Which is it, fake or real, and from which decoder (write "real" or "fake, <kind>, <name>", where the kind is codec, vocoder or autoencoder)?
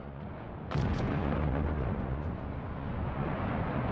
fake, vocoder, Vocos